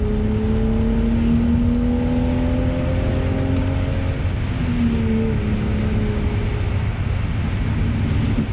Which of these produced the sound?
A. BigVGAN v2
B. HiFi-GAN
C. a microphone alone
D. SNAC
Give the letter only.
C